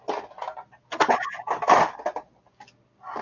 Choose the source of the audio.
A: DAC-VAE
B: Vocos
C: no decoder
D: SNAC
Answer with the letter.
C